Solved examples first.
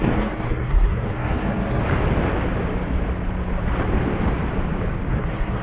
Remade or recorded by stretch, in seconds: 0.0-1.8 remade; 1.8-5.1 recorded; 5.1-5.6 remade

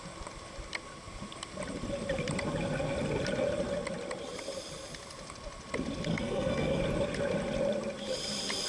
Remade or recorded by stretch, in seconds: 0.0-6.1 recorded; 6.1-6.8 remade; 6.8-8.7 recorded

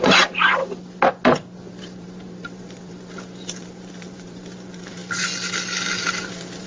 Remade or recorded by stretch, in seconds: 0.0-0.6 remade; 0.6-1.7 recorded; 1.7-5.0 remade; 5.0-5.9 recorded; 5.9-6.7 remade

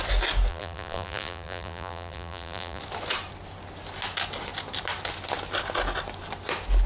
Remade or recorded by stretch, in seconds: 0.0-0.5 recorded; 0.5-2.8 remade; 2.8-6.9 recorded

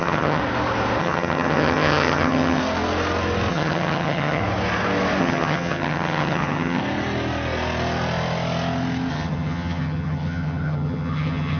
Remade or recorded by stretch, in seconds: 0.0-0.4 remade; 0.4-1.0 recorded; 1.0-2.6 remade; 2.6-3.5 recorded; 3.5-4.4 remade; 4.4-5.2 recorded; 5.2-6.8 remade; 6.8-9.1 recorded; 9.1-11.6 remade

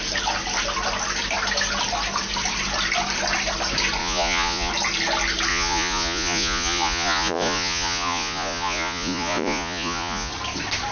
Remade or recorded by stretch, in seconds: 0.0-4.0 recorded; 4.0-4.7 remade; 4.7-5.5 recorded; 5.5-10.3 remade; 10.3-10.9 recorded

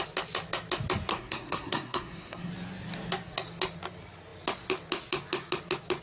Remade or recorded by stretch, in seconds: 0.0-1.1 recorded; 1.1-2.5 remade; 2.5-6.0 recorded

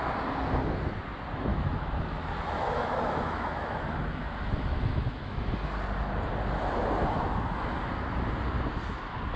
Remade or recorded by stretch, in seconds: 0.0-1.5 recorded; 1.5-5.5 remade; 5.5-9.4 recorded